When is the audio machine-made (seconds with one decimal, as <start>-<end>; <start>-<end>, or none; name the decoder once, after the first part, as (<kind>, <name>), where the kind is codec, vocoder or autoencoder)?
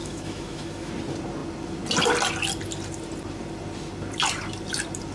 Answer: 0.0-0.9 (autoencoder, DAC-VAE)